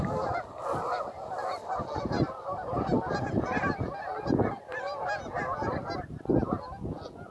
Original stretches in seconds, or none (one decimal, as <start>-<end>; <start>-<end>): 0.0-7.3